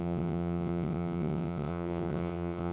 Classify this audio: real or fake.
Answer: fake